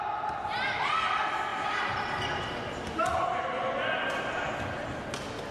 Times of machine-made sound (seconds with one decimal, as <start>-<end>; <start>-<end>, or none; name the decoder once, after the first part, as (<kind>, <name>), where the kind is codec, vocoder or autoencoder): none